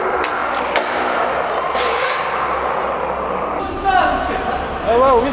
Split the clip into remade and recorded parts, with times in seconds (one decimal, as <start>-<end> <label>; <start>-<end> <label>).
0.0-5.3 recorded